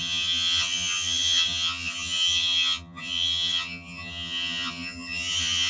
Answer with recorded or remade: remade